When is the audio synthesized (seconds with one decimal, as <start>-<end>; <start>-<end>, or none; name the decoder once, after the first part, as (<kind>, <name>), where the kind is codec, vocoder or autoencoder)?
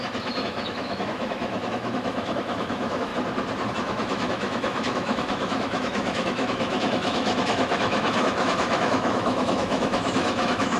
0.0-3.1 (autoencoder, DAC-VAE); 3.7-10.8